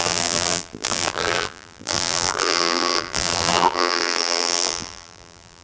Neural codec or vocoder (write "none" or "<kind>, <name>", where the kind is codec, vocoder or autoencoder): vocoder, BigVGAN v2